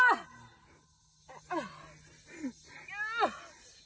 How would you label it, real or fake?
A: real